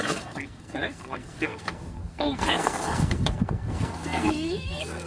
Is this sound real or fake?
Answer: fake